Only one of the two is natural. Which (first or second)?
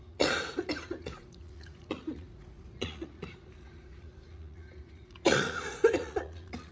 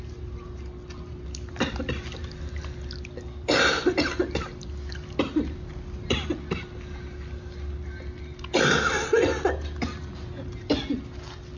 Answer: second